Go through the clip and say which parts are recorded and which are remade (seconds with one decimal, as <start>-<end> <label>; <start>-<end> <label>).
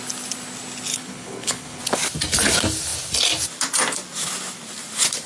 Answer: 0.0-0.9 recorded; 0.9-1.8 remade; 1.8-5.3 recorded